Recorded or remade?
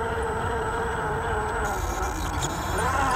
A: recorded